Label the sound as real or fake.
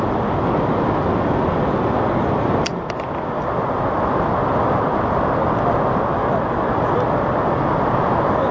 real